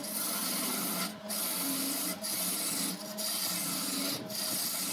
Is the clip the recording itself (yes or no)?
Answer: yes